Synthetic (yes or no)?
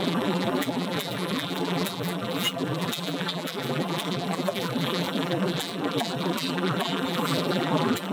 yes